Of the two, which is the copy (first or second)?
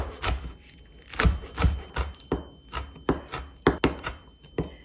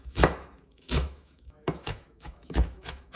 second